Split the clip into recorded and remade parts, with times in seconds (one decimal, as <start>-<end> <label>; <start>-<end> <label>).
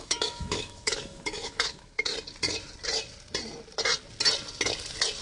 0.0-2.1 remade; 2.1-5.2 recorded